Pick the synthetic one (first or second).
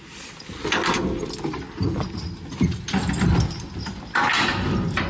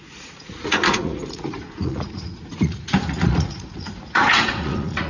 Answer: second